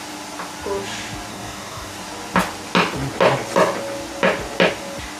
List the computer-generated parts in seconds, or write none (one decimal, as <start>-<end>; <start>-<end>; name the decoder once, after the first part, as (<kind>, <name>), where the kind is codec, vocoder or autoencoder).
1.3-1.9 (codec, DAC)